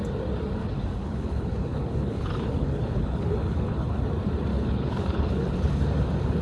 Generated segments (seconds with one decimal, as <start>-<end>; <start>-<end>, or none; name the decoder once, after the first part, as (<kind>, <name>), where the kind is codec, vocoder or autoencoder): 0.6-4.0 (codec, HILCodec); 4.5-5.8